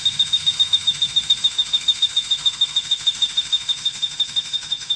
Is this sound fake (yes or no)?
yes